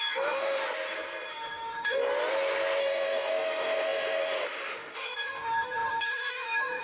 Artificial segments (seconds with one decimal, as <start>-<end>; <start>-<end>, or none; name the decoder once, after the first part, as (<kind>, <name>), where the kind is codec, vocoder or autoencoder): 0.0-0.6 (autoencoder, DAC-VAE); 1.3-2.0; 2.8-6.8